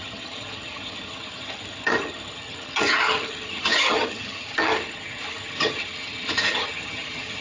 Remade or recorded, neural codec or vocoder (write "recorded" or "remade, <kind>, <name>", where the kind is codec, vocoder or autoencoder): remade, vocoder, HiFi-GAN